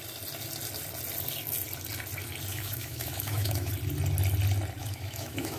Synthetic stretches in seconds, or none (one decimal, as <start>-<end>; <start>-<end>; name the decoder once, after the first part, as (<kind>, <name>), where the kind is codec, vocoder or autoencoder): 2.5-3.7 (autoencoder, DAC-VAE); 4.8-5.6